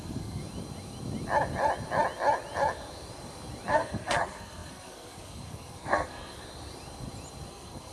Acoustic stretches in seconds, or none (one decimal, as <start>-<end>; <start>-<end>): 0.4-3.7; 6.4-7.5